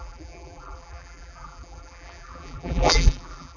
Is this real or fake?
fake